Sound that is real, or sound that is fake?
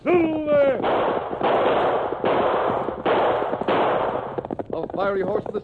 real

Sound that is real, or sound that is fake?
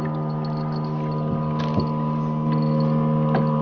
real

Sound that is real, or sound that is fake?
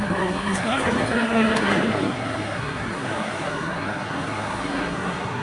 fake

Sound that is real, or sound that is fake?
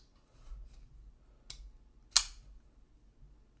real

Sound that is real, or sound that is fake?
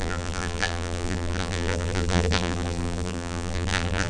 fake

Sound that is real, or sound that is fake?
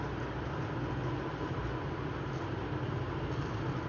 real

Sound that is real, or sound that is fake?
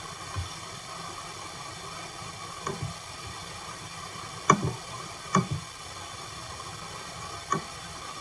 real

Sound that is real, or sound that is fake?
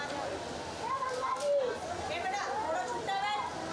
real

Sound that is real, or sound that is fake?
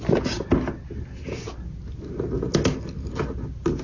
real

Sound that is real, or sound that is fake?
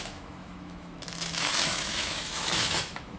fake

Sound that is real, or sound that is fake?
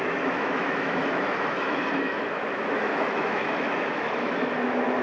fake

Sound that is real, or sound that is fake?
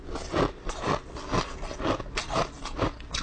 real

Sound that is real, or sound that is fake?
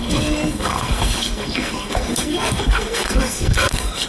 fake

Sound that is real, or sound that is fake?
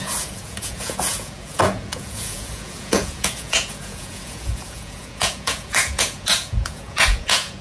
fake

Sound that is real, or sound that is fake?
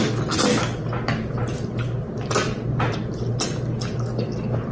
real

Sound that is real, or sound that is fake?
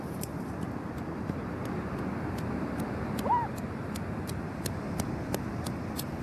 fake